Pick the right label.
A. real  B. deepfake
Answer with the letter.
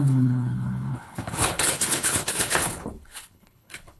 B